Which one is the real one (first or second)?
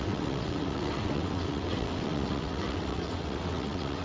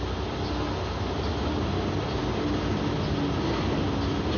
second